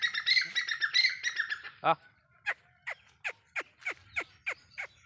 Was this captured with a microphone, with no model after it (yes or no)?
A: yes